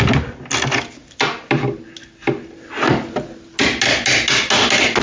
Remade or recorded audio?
recorded